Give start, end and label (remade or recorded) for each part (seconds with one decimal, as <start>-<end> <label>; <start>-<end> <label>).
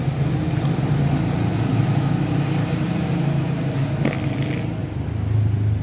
0.0-1.7 recorded; 1.7-2.3 remade; 2.3-5.8 recorded